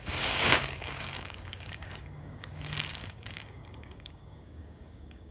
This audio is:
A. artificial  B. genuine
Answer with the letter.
A